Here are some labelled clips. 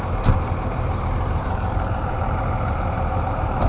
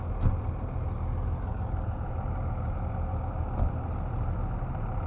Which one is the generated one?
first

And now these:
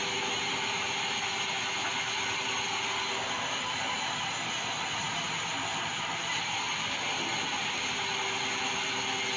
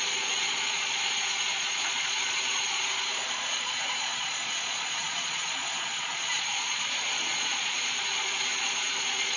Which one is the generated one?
second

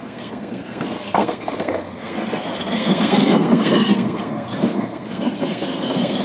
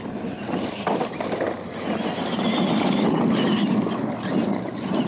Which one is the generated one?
first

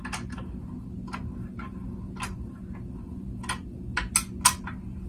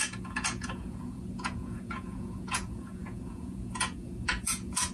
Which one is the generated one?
second